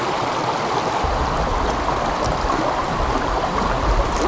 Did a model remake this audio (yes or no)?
no